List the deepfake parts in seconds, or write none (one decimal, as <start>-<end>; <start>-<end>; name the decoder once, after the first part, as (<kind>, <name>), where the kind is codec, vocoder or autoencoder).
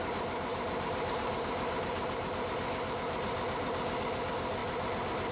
0.5-2.3 (vocoder, BigVGAN v2)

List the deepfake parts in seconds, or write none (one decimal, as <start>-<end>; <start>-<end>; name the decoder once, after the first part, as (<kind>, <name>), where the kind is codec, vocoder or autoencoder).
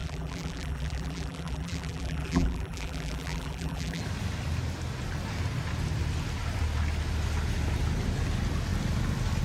0.0-4.0 (vocoder, BigVGAN v2)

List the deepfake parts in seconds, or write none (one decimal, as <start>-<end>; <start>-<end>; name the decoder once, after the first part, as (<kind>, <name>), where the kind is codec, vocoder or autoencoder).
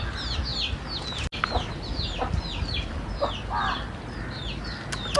none